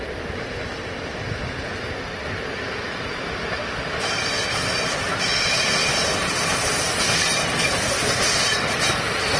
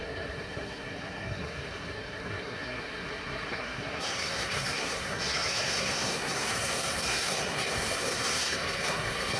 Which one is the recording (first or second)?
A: first